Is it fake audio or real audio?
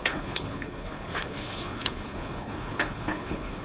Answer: fake